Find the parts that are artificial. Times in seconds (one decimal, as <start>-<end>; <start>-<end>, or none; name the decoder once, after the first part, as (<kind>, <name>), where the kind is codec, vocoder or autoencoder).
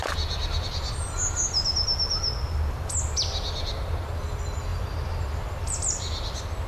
none